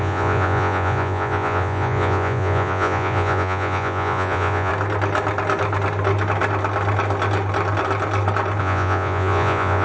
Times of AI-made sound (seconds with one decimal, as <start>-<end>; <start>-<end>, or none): 0.0-4.7; 8.6-9.8